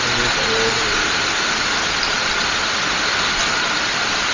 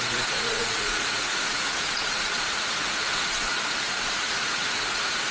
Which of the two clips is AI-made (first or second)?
second